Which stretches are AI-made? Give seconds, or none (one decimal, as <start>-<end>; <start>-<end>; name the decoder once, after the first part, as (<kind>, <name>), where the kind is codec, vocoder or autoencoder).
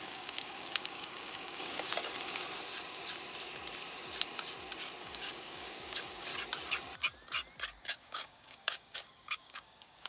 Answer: 0.0-2.0 (codec, DAC); 5.0-6.3; 7.8-10.1